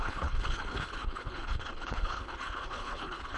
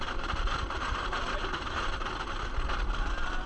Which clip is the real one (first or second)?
second